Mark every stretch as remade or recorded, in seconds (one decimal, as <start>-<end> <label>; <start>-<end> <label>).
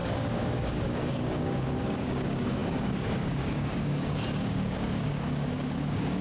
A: 0.0-6.2 remade